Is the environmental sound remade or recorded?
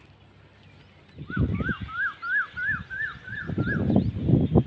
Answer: recorded